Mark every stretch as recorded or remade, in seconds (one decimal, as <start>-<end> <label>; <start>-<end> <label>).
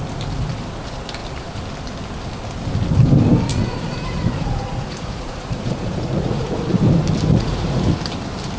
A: 0.0-3.5 recorded; 3.5-6.6 remade; 6.6-7.3 recorded; 7.3-7.9 remade; 7.9-8.6 recorded